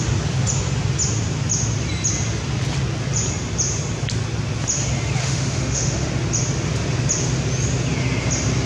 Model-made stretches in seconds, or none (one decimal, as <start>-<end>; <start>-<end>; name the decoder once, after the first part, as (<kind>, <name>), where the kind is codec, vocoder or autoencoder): 5.2-6.1 (autoencoder, DAC-VAE)